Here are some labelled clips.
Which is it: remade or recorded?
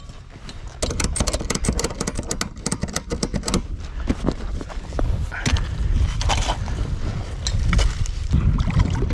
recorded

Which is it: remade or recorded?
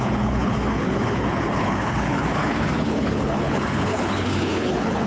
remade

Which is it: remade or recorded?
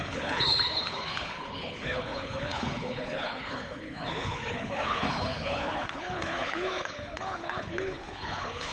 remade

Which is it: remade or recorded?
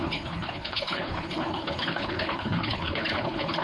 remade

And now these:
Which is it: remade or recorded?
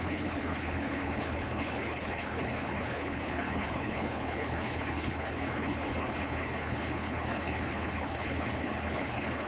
remade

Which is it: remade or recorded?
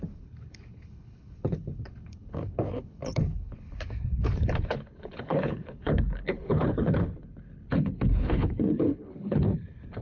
remade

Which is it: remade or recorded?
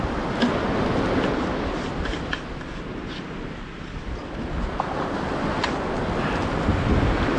recorded